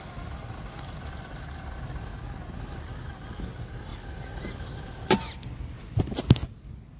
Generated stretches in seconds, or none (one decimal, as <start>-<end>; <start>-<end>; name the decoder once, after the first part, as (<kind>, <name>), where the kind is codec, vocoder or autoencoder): none